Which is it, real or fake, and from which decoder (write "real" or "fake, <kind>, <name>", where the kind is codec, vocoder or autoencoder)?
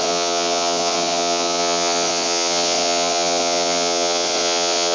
fake, vocoder, WaveNeXt